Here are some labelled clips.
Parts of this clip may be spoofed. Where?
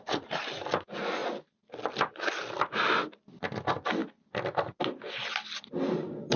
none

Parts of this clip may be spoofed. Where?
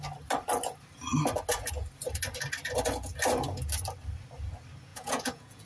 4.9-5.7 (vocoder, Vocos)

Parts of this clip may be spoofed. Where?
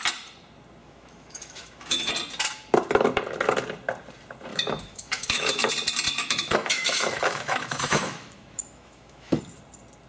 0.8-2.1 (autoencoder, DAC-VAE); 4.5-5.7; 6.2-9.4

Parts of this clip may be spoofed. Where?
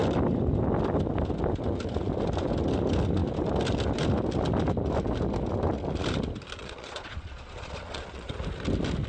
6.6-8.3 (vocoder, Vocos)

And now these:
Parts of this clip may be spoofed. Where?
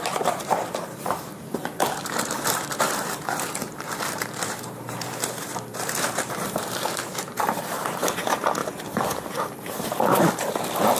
0.0-11.0 (vocoder, BigVGAN v2)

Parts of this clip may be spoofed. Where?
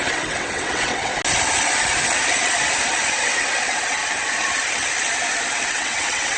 0.0-1.1 (vocoder, WaveNeXt); 3.2-4.0; 5.5-6.4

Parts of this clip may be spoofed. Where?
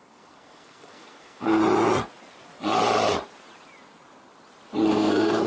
0.0-1.6 (codec, SNAC); 4.9-5.5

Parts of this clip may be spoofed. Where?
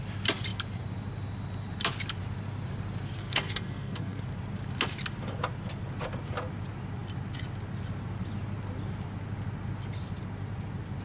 3.2-4.2 (codec, SNAC)